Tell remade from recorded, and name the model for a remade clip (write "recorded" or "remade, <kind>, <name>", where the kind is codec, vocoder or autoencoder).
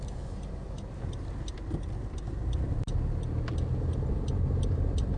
recorded